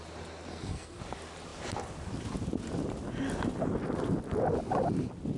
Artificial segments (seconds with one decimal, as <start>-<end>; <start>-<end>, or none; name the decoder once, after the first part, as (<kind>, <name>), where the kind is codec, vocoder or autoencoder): 0.5-1.0 (codec, SNAC)